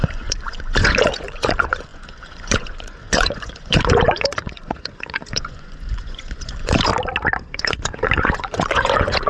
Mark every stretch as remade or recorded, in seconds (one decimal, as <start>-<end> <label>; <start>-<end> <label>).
0.0-6.9 remade; 6.9-7.4 recorded; 7.4-9.3 remade